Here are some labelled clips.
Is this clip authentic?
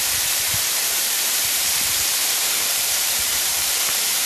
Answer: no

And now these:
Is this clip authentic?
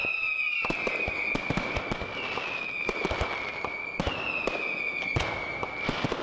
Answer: yes